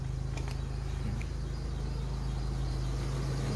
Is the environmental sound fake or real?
real